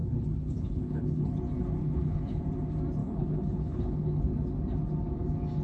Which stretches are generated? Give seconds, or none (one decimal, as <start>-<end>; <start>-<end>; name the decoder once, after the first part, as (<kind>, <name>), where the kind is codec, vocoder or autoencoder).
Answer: 0.0-1.4 (codec, HILCodec); 1.8-2.4; 3.0-4.2